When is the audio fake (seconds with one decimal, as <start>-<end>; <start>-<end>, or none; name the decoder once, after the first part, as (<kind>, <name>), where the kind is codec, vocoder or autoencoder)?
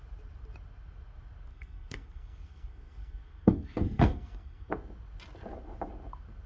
1.5-4.7 (codec, SNAC)